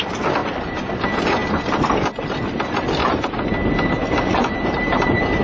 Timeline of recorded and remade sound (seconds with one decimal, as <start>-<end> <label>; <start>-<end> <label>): 0.0-0.4 recorded; 0.4-0.9 remade; 0.9-3.0 recorded; 3.0-3.5 remade; 3.5-4.0 recorded; 4.0-5.4 remade